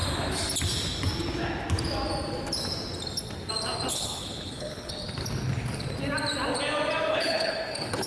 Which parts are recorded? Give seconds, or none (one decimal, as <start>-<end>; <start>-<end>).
0.0-3.9; 4.9-7.1